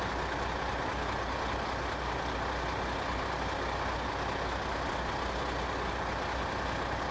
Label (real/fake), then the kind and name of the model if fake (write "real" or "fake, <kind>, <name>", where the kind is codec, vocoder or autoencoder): real